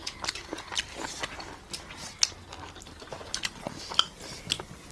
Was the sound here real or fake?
real